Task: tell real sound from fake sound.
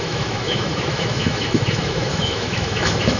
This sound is fake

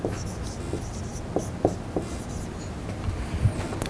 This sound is real